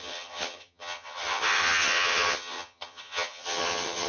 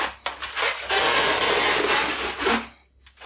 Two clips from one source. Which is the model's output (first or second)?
first